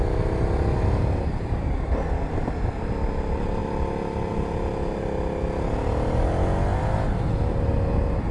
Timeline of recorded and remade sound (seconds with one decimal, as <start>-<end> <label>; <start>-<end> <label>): 0.0-8.3 recorded